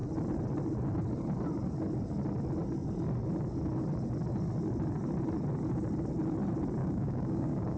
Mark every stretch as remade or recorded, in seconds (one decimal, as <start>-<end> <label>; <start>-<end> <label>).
0.0-6.8 recorded; 6.8-7.8 remade